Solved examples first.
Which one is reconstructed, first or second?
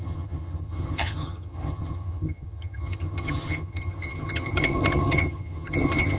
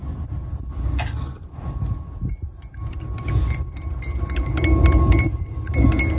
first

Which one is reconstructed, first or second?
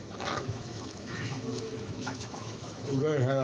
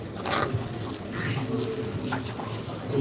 first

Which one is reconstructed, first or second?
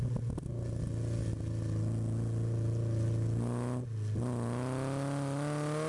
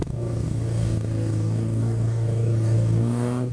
second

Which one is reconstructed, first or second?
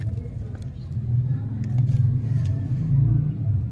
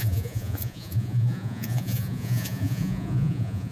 second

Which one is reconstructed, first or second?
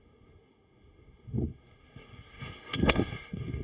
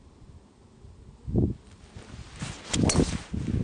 first